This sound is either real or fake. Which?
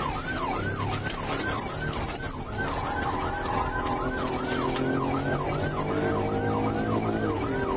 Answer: real